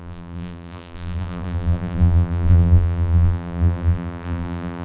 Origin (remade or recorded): remade